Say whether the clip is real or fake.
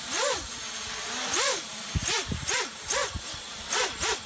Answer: real